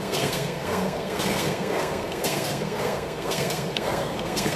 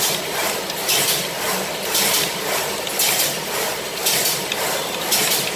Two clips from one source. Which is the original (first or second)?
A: second